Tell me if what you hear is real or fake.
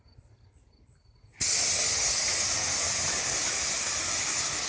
real